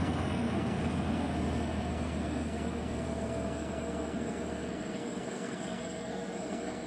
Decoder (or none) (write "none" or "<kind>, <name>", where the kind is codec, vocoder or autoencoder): codec, SNAC